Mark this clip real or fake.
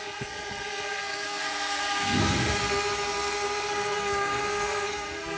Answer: fake